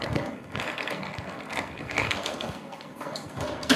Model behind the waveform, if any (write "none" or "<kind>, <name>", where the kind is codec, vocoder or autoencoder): codec, SNAC